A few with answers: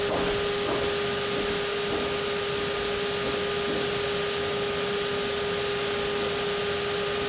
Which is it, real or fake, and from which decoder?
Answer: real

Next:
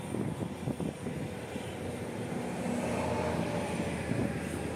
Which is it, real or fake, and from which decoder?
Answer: real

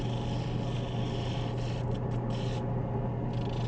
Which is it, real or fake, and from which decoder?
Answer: real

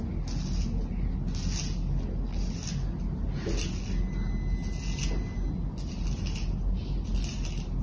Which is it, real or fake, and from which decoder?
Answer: real